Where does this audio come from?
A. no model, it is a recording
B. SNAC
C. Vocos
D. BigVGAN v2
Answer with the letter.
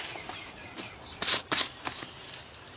A